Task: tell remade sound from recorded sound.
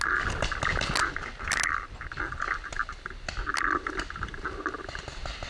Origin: recorded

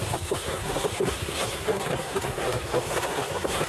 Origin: remade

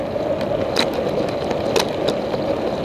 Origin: recorded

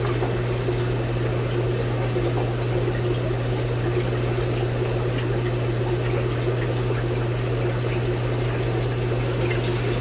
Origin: recorded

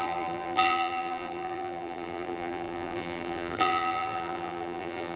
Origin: remade